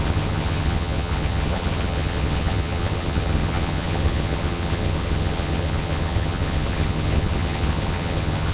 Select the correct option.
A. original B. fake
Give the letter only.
B